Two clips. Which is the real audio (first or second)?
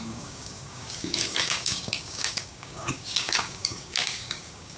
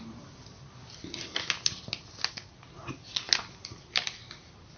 second